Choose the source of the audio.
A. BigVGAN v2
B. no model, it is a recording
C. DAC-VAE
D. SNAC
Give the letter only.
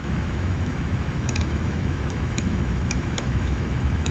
C